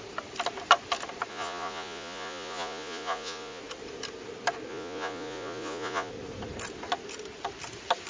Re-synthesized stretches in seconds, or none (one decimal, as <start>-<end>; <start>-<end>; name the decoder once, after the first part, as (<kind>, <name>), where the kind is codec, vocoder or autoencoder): 1.3-3.6 (vocoder, Vocos); 4.7-6.1